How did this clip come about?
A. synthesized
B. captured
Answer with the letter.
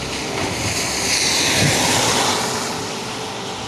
B